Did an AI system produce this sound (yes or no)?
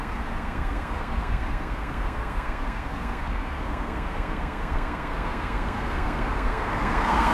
yes